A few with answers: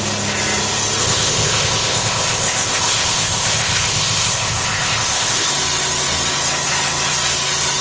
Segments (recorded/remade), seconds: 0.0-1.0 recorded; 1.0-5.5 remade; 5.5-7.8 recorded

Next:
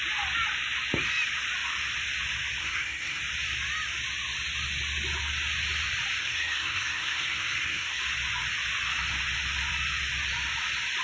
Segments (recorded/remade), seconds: 0.0-2.6 recorded; 2.6-3.2 remade; 3.2-6.2 recorded; 6.2-8.0 remade; 8.0-11.0 recorded

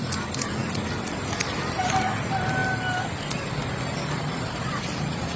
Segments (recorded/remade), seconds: 0.0-2.6 remade; 2.6-3.4 recorded; 3.4-5.4 remade